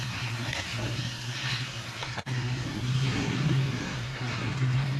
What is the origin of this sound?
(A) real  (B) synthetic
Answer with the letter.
B